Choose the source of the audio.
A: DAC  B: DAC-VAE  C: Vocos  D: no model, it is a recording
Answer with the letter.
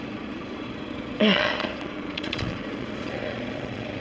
C